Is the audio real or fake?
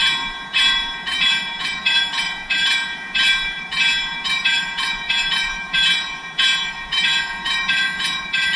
fake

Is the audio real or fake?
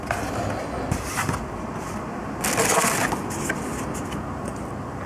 real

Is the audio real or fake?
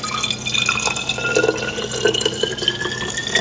real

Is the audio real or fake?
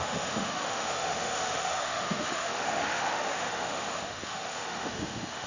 fake